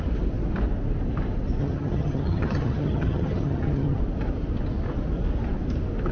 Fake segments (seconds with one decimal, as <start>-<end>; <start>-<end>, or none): 1.6-4.0